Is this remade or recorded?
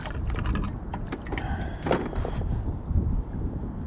recorded